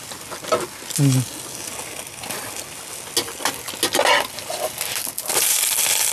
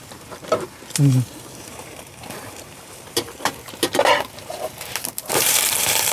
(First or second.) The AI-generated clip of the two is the second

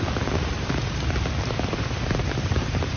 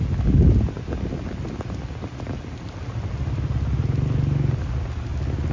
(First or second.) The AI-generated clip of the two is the first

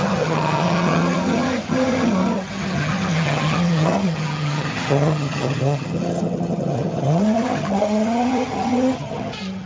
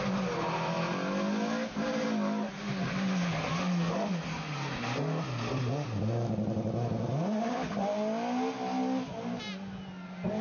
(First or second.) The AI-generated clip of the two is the first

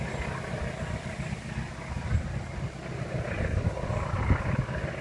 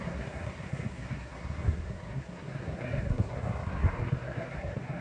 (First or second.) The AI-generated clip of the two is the second